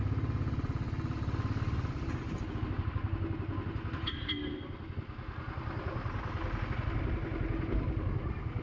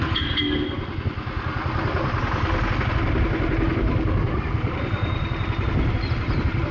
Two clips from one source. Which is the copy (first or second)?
second